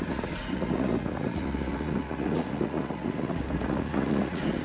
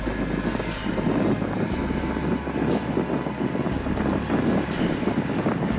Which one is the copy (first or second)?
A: first